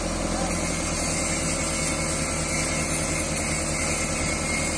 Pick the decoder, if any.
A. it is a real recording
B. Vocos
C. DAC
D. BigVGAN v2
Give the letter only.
A